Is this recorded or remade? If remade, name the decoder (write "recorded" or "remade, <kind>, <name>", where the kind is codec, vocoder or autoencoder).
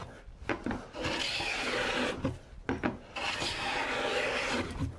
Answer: recorded